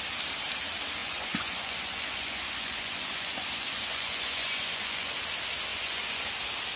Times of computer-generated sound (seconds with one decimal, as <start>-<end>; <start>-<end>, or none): 1.0-5.1; 5.7-6.3